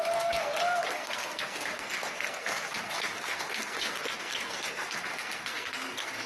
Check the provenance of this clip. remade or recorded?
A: remade